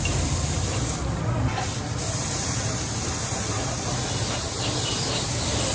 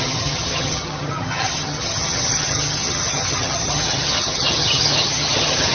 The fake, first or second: second